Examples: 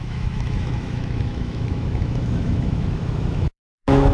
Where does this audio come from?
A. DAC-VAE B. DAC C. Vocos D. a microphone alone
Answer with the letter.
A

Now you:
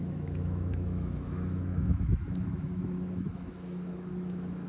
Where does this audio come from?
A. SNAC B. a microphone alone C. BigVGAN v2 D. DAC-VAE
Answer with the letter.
D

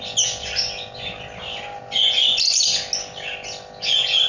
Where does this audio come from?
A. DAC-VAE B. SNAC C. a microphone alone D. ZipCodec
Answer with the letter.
C